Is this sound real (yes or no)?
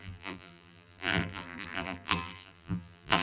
no